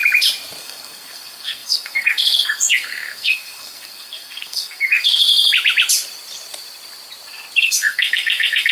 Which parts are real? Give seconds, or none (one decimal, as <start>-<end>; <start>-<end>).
0.0-0.6; 5.3-7.6

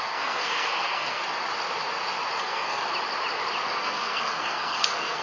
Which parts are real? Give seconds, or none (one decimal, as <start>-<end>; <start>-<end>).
1.2-2.4; 2.8-3.8

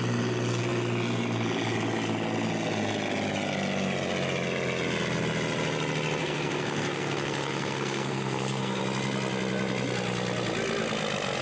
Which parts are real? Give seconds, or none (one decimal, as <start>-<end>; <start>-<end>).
0.0-6.2; 8.8-11.4

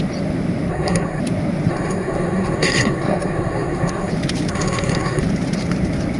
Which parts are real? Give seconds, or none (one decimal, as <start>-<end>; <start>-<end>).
0.0-0.7; 1.2-1.7; 4.1-4.5; 5.2-6.2

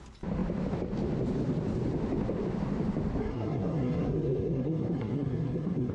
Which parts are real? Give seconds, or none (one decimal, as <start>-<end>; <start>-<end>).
0.0-3.2

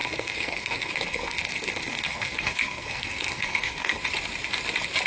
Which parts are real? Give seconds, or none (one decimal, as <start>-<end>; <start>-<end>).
4.0-5.1

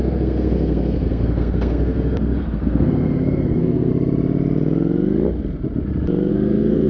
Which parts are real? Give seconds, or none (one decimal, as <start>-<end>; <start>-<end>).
3.9-6.3